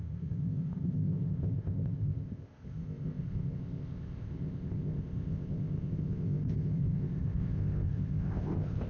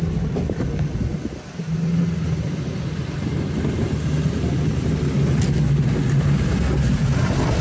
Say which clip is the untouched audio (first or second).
second